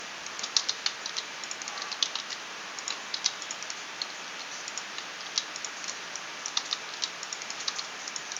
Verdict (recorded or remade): recorded